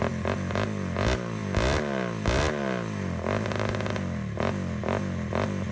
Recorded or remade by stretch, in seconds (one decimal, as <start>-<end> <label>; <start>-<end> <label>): 0.0-5.7 recorded